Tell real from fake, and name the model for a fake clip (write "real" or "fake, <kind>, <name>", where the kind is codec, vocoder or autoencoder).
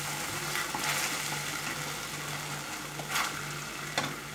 real